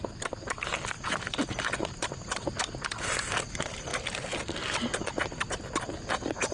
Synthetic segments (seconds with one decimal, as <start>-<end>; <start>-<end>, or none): none